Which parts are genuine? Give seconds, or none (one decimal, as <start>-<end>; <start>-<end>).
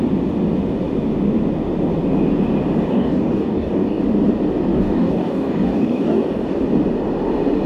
0.0-2.9; 4.0-4.7; 6.6-7.7